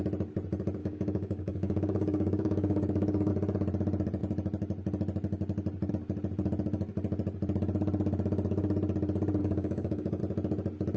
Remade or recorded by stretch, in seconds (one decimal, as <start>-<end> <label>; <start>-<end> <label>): 0.0-0.8 recorded; 0.8-3.3 remade; 3.3-9.4 recorded; 9.4-10.2 remade; 10.2-11.0 recorded